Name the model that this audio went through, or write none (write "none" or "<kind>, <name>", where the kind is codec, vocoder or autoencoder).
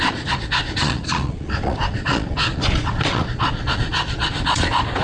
vocoder, Vocos